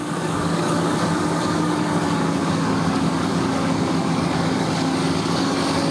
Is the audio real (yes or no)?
no